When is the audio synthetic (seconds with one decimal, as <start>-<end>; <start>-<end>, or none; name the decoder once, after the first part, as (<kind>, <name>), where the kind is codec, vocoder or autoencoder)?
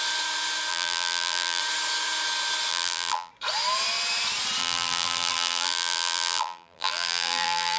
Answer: 0.7-1.6 (vocoder, BigVGAN v2); 2.7-3.3; 4.6-7.8